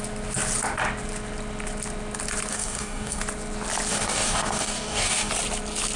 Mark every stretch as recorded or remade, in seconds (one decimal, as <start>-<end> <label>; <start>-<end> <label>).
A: 0.0-2.5 recorded; 2.5-3.2 remade; 3.2-3.9 recorded; 3.9-5.3 remade; 5.3-6.0 recorded